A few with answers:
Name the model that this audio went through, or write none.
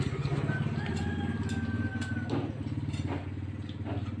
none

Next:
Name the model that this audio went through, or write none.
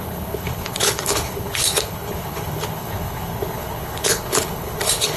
codec, HILCodec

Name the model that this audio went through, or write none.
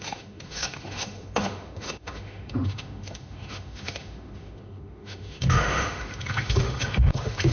autoencoder, DAC-VAE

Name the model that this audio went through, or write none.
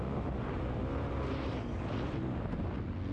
none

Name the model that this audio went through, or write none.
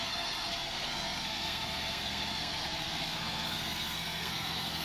codec, SNAC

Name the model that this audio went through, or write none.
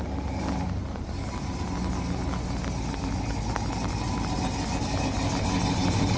none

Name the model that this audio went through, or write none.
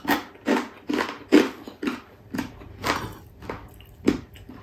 none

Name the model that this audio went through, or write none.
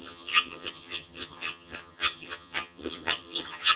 vocoder, HiFi-GAN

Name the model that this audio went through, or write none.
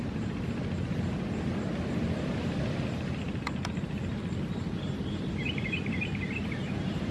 none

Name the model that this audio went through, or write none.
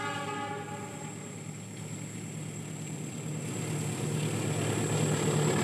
none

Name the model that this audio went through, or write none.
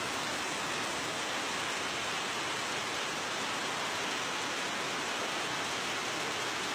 none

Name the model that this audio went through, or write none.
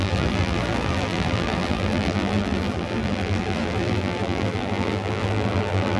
vocoder, BigVGAN v2